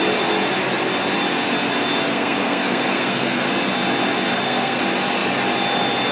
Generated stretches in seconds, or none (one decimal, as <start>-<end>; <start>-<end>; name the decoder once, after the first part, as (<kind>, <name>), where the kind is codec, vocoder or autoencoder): 2.1-3.5 (codec, SNAC); 4.3-4.8